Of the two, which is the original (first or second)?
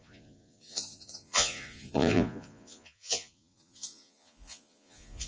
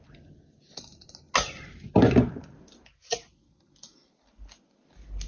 second